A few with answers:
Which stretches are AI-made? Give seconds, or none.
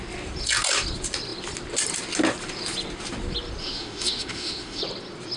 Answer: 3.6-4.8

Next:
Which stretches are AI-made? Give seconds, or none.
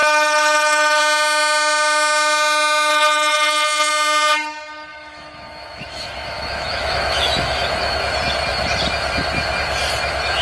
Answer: 0.0-1.0; 2.9-3.9; 4.9-8.0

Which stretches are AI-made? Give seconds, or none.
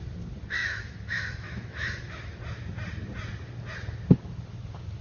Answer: 0.6-2.4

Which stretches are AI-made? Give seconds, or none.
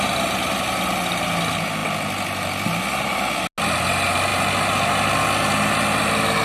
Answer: none